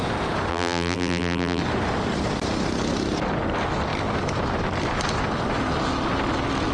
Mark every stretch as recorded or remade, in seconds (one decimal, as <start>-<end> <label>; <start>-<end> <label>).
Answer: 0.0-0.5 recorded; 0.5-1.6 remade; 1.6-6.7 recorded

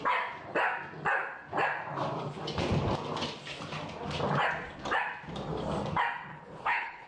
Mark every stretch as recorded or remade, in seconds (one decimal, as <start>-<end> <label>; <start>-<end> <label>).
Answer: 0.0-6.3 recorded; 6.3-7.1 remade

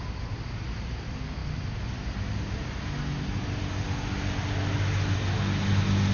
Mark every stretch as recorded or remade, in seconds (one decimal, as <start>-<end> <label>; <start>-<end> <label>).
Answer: 0.0-6.1 recorded